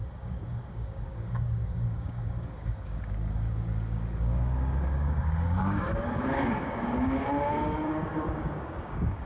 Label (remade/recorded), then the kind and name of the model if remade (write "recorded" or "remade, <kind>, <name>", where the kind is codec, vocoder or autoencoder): remade, codec, DAC